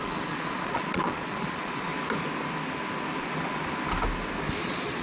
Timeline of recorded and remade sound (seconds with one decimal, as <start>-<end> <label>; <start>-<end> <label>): 0.0-1.9 remade; 1.9-4.6 recorded; 4.6-5.0 remade